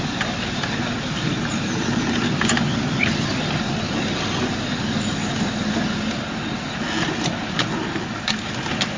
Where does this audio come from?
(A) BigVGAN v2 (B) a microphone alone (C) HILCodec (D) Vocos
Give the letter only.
B